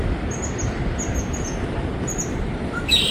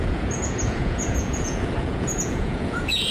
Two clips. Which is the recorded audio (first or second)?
first